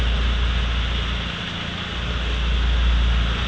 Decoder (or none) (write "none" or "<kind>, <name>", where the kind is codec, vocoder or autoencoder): none